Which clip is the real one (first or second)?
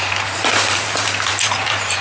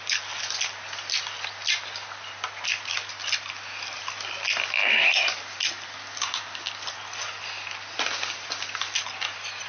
second